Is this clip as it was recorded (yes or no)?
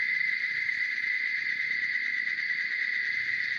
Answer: yes